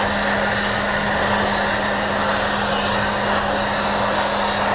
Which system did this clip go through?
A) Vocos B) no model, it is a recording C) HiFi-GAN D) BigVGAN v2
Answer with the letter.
B